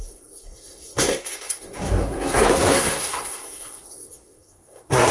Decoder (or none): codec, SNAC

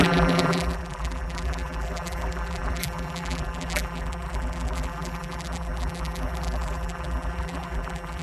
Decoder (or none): vocoder, BigVGAN v2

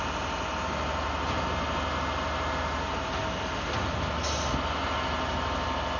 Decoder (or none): none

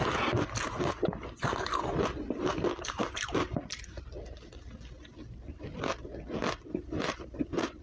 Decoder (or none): vocoder, BigVGAN v2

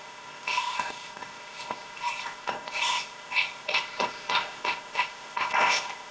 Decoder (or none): codec, ZipCodec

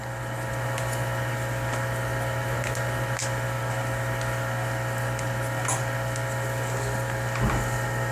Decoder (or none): none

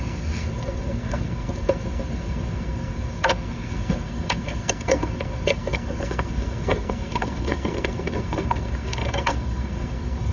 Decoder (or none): codec, SNAC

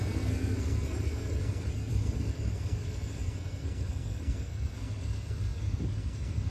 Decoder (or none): codec, SNAC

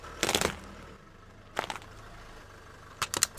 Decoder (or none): none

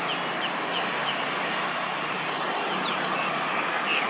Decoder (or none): none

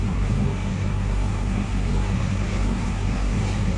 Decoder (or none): codec, SNAC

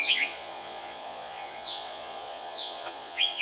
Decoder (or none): vocoder, Vocos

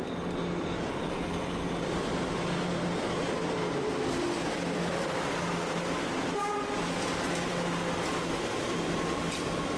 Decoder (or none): none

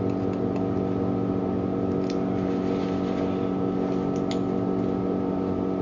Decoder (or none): none